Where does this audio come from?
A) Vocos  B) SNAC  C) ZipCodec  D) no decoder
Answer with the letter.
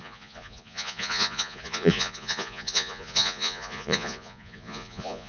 A